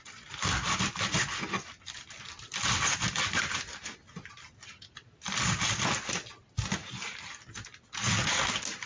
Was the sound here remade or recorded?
recorded